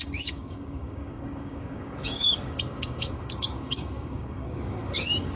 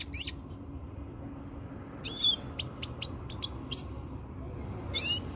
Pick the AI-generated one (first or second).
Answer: first